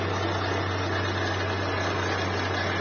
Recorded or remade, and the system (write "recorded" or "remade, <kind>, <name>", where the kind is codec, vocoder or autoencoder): recorded